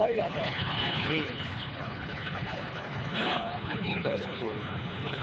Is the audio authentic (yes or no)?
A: no